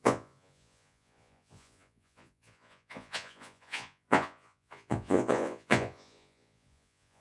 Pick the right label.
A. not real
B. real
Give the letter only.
A